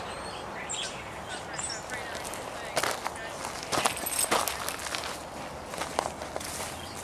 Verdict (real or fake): real